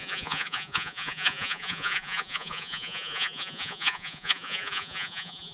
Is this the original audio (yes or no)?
no